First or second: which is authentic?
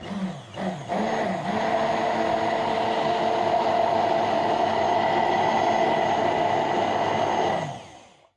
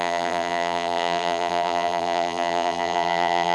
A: first